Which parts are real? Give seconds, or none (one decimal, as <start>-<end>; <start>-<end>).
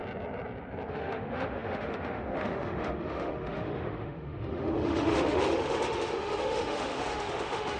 0.0-0.9